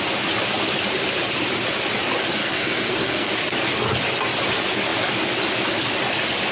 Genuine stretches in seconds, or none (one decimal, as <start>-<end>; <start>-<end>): 0.0-2.4; 3.3-6.5